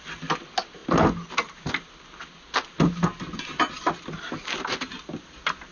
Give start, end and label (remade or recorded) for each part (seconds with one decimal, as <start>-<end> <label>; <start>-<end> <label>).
0.0-5.7 recorded